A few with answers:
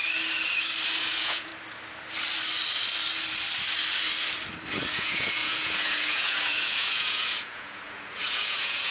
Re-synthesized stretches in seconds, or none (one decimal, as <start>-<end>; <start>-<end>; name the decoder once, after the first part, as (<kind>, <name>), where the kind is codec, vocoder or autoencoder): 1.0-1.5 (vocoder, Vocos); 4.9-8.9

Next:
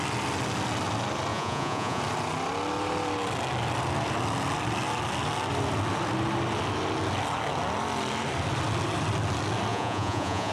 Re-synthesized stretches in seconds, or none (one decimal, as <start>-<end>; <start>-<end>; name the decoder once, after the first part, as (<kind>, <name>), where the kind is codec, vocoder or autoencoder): 1.3-2.0 (vocoder, Vocos); 9.7-10.5

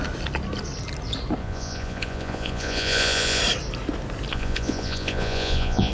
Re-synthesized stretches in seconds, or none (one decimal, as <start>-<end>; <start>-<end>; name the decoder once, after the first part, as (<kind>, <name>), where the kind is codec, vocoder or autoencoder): 1.4-3.4 (vocoder, Vocos); 4.3-5.9

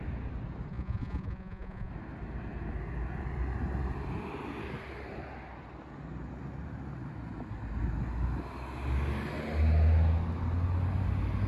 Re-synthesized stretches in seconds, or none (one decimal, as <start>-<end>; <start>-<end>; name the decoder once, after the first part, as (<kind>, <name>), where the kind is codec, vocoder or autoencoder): 0.7-1.9 (vocoder, Vocos)